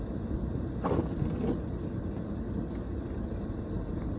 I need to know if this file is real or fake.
real